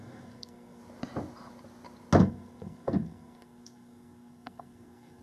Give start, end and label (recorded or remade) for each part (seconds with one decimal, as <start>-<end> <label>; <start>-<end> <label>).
0.0-0.8 remade; 0.8-2.2 recorded; 2.2-5.2 remade